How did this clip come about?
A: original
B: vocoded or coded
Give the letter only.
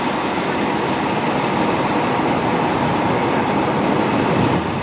A